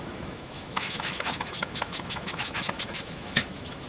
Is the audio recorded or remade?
remade